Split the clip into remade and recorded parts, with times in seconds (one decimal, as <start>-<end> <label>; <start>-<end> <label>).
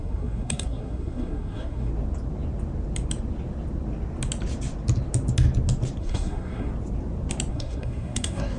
0.0-1.9 remade; 1.9-6.0 recorded; 6.0-6.7 remade; 6.7-7.5 recorded; 7.5-8.6 remade